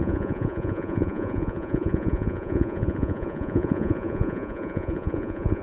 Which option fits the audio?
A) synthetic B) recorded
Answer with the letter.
A